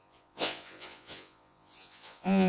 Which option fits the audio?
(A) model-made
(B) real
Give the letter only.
A